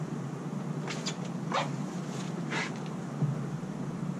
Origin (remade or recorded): recorded